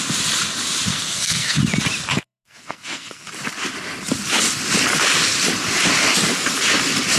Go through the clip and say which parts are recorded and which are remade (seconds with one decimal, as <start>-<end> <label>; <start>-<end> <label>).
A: 0.0-0.9 recorded; 0.9-1.6 remade; 1.6-2.1 recorded; 2.1-3.3 remade; 3.3-7.2 recorded